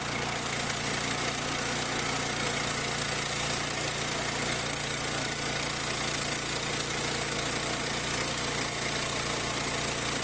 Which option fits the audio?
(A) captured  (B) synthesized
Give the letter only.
A